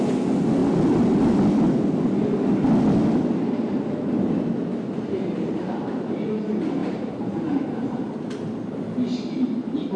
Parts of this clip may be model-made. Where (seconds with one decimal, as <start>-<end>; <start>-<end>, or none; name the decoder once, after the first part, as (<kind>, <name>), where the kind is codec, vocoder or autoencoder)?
6.8-8.1 (vocoder, BigVGAN v2)